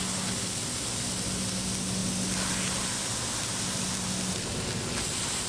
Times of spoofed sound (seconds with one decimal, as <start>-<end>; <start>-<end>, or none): none